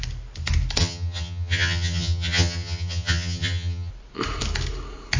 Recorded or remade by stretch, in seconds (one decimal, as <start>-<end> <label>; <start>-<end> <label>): 0.0-0.8 recorded; 0.8-3.9 remade; 3.9-5.2 recorded